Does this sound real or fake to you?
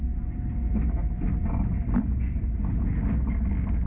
real